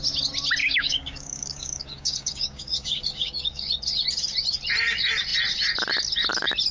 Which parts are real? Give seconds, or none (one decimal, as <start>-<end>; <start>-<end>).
0.0-0.6; 3.7-6.7